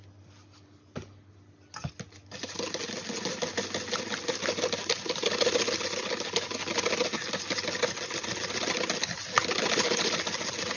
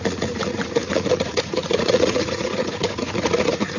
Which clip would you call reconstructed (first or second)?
second